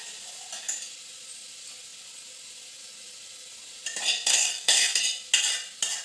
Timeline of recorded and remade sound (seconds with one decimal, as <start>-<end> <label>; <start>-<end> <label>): 0.0-4.3 recorded; 4.3-5.0 remade; 5.0-6.0 recorded